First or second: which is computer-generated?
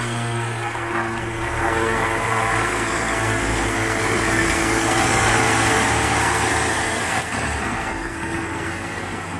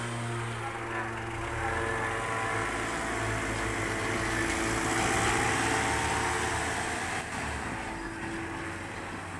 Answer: first